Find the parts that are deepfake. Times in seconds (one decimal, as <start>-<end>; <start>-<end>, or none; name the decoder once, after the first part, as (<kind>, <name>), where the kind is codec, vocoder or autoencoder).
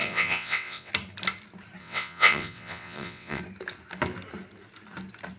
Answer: 0.0-0.9 (vocoder, WaveNeXt); 1.8-3.4